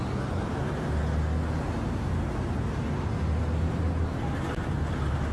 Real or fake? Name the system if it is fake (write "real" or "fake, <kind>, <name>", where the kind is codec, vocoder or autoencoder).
real